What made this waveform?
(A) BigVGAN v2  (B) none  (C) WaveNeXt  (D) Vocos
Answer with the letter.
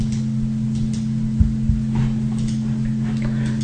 B